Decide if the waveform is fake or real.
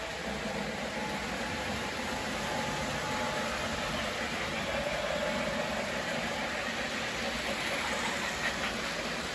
real